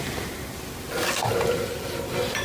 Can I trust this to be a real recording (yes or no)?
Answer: yes